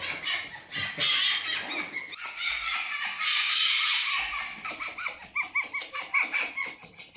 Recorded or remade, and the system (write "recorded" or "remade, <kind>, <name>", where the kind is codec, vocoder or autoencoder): recorded